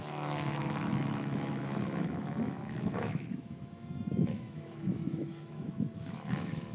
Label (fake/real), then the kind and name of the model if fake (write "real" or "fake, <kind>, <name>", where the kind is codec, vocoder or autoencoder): fake, autoencoder, DAC-VAE